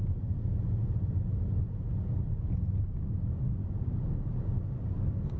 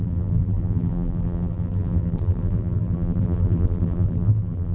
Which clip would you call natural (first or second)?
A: first